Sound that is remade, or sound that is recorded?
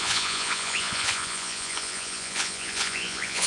remade